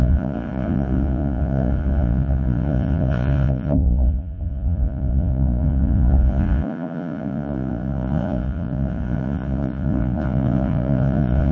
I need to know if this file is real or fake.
fake